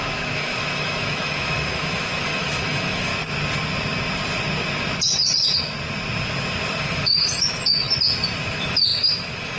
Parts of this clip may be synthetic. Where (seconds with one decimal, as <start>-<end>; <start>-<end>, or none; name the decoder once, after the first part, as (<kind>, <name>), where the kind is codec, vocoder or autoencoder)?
0.0-3.1 (autoencoder, DAC-VAE); 6.8-7.9; 8.5-9.6